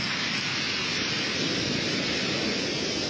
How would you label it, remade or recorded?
recorded